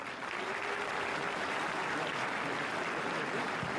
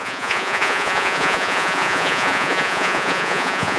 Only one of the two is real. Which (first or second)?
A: first